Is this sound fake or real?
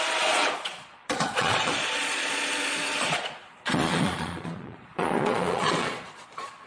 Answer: fake